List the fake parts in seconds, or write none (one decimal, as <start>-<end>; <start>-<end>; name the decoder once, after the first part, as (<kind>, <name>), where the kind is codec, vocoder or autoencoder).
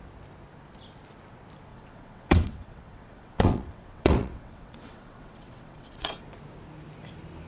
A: 1.7-6.2 (vocoder, WaveNeXt)